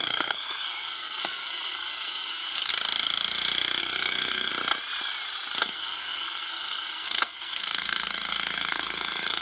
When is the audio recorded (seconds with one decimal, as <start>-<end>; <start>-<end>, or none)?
2.7-3.8; 4.5-5.6